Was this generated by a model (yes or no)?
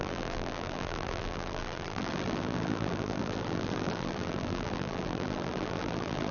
yes